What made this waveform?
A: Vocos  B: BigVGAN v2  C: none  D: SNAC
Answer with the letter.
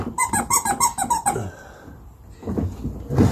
C